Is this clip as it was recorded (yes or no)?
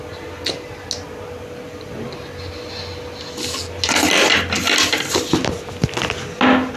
yes